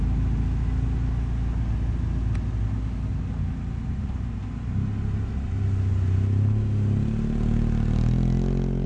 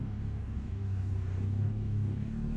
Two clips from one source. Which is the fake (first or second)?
second